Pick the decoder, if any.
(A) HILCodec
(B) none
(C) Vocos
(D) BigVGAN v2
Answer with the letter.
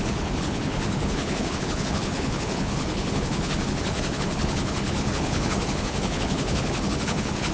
A